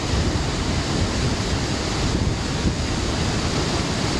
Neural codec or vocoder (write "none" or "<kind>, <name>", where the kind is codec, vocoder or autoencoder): none